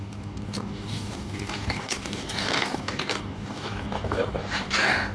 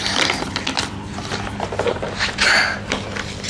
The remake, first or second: first